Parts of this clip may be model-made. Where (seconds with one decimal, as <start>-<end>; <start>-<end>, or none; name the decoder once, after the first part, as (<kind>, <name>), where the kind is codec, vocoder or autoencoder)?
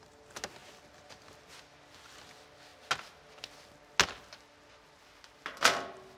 none